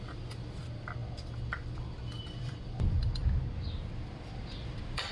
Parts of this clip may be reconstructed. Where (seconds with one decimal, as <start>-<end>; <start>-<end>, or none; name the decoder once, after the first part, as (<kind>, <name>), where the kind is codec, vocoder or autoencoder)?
0.0-3.2 (vocoder, BigVGAN v2); 3.9-5.1